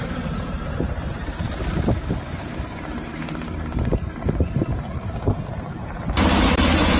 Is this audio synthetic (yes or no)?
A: yes